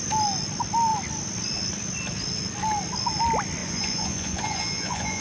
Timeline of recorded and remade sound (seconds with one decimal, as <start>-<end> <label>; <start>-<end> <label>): 0.0-3.6 recorded; 3.6-5.2 remade